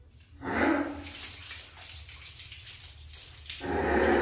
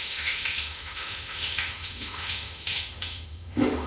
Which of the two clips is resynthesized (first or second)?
second